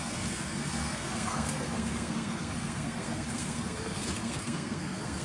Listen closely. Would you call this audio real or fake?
fake